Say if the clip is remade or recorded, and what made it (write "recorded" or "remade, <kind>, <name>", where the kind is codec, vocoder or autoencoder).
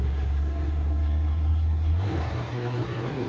remade, codec, SNAC